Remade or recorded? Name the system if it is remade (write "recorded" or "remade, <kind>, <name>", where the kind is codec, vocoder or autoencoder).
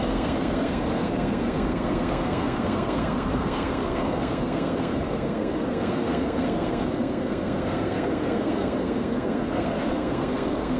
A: remade, codec, SNAC